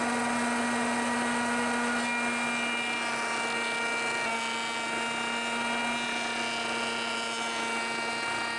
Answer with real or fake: real